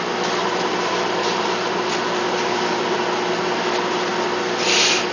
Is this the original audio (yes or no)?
yes